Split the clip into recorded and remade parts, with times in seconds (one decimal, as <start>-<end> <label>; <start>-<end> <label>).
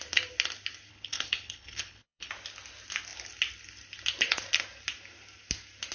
0.0-0.9 recorded; 0.9-2.3 remade; 2.3-5.9 recorded